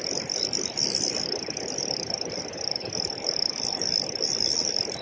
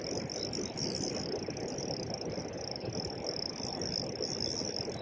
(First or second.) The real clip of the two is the second